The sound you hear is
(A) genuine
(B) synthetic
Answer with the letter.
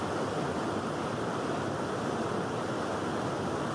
A